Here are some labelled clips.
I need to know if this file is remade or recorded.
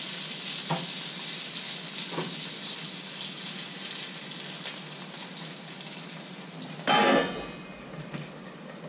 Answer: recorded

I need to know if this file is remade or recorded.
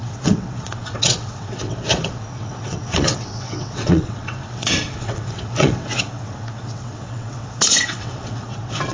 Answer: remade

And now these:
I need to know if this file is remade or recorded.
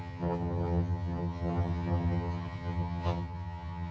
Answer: remade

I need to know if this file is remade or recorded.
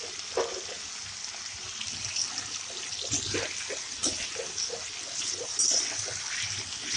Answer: recorded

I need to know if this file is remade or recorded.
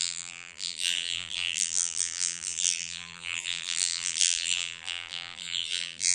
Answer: remade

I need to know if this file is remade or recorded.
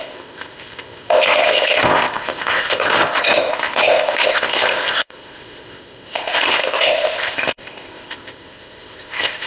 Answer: remade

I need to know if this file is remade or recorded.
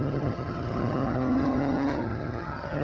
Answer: remade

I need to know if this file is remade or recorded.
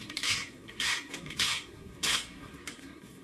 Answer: remade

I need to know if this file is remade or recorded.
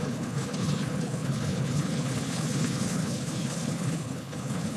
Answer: remade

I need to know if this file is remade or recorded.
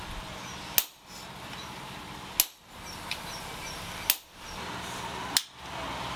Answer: recorded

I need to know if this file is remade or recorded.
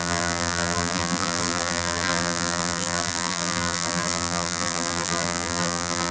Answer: remade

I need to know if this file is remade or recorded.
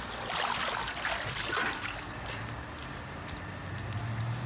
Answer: recorded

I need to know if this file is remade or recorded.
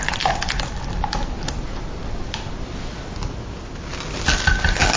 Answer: recorded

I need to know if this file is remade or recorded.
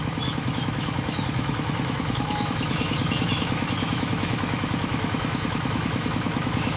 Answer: remade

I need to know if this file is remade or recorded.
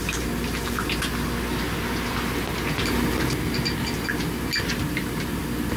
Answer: recorded